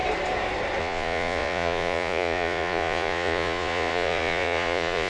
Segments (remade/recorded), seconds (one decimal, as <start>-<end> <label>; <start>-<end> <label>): 0.0-0.8 recorded; 0.8-5.1 remade